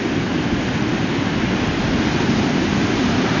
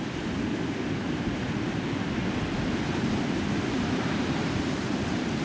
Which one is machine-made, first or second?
second